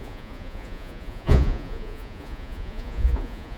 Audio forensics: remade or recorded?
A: remade